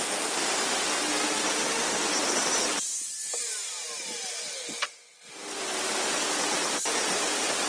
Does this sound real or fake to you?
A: real